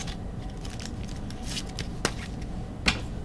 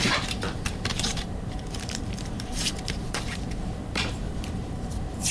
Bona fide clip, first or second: first